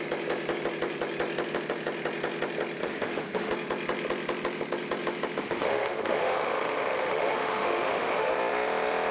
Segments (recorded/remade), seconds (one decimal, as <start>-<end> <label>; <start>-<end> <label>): 0.0-2.8 recorded; 2.8-3.5 remade; 3.5-5.4 recorded; 5.4-8.3 remade; 8.3-9.1 recorded